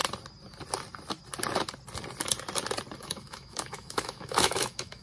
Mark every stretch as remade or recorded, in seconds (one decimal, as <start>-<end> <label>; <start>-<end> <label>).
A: 0.0-3.0 recorded; 3.0-5.0 remade